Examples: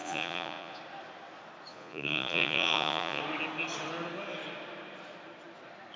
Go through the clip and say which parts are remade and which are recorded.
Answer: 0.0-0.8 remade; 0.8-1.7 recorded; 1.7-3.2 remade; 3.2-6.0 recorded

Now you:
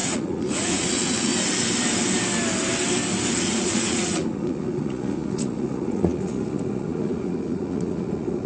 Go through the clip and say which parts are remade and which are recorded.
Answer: 0.0-1.3 remade; 1.3-3.3 recorded; 3.3-8.5 remade